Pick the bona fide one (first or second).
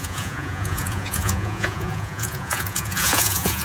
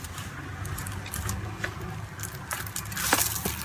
second